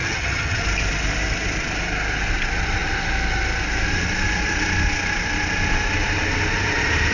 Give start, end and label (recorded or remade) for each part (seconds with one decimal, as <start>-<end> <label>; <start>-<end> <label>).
0.0-0.6 remade; 0.6-7.1 recorded

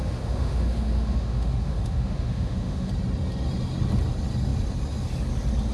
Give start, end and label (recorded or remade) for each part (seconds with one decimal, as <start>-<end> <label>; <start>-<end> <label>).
0.0-2.9 remade; 2.9-5.7 recorded